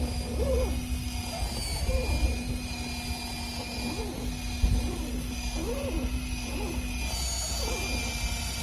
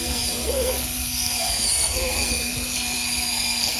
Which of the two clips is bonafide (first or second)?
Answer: first